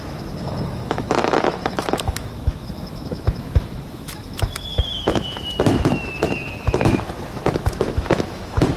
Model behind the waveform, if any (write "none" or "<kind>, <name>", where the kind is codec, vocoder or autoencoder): autoencoder, DAC-VAE